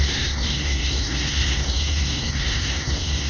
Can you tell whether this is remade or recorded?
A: remade